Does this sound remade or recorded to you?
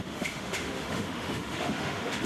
remade